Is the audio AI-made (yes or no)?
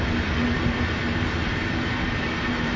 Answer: no